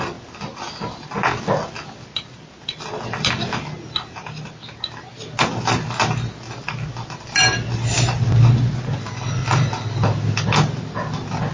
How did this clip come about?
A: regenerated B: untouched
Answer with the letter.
B